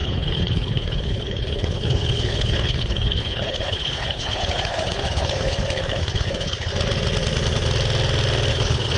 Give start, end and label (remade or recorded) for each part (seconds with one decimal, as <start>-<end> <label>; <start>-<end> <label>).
0.0-6.7 remade; 6.7-8.5 recorded; 8.5-9.0 remade